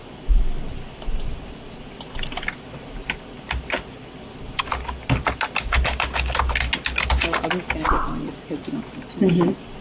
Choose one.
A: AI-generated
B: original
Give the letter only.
B